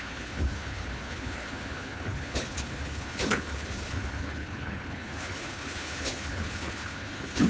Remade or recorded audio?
remade